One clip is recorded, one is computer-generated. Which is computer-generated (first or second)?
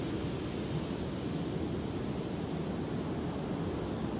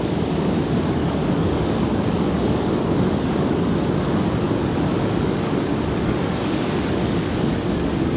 second